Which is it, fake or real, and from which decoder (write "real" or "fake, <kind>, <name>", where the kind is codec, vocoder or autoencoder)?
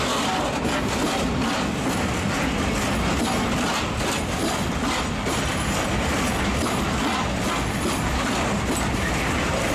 real